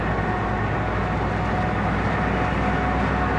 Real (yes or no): yes